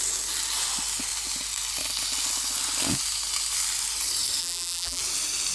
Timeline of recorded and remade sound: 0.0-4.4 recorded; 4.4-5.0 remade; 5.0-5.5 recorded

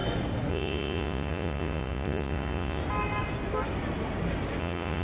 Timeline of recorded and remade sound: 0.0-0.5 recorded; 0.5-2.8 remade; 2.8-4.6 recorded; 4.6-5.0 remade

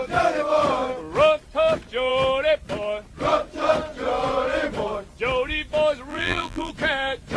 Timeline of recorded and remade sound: 0.0-6.1 recorded; 6.1-6.7 remade; 6.7-7.4 recorded

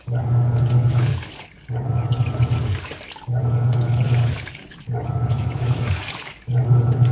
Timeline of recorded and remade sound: 0.0-1.1 remade; 1.1-1.7 recorded; 1.7-7.1 remade

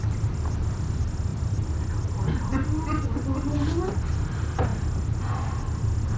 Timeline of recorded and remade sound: 0.0-6.2 recorded